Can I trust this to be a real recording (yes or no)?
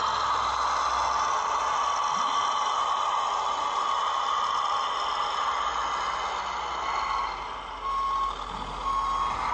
yes